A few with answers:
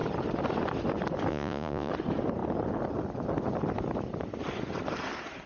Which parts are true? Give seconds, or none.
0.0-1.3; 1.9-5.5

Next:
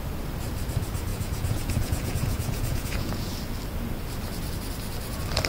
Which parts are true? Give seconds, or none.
0.0-1.1; 3.3-5.5

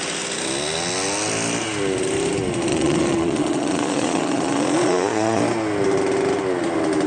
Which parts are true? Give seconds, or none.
0.0-2.7; 5.4-7.1

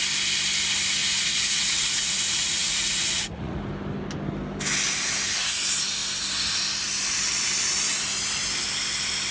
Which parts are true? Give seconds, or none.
0.0-1.0; 3.6-9.3

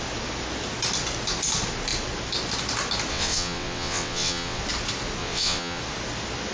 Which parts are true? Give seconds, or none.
0.0-3.1; 4.6-5.2; 5.8-6.5

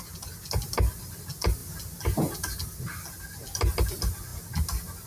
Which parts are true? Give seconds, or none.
0.0-5.1

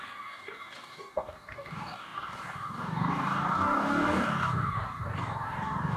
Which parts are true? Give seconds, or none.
none

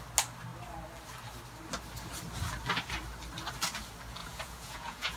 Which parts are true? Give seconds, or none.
0.0-4.2